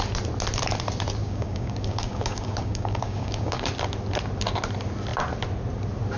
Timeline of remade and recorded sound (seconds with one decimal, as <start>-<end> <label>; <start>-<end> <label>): 0.0-1.2 recorded; 1.2-3.7 remade; 3.7-6.2 recorded